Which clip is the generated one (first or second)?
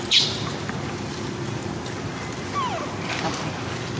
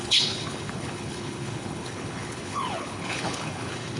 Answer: second